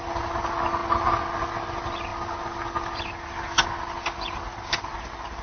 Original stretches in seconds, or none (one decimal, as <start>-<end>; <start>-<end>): 0.0-5.4